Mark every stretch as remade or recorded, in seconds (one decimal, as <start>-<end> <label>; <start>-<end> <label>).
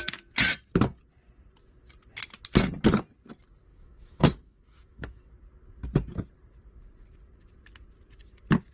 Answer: 0.0-3.7 recorded; 3.7-5.3 remade; 5.3-8.7 recorded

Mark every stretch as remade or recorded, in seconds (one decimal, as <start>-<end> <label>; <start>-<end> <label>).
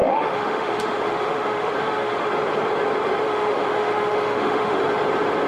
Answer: 0.0-2.3 remade; 2.3-3.2 recorded; 3.2-4.8 remade; 4.8-5.5 recorded